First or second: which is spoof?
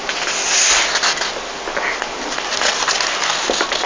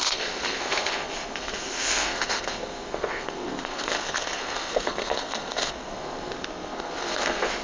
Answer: second